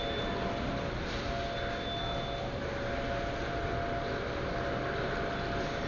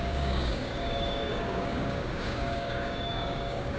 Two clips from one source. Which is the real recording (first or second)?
first